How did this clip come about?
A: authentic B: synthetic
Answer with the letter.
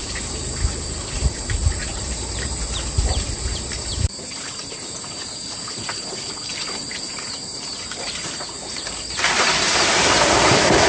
B